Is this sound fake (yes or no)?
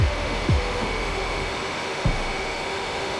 yes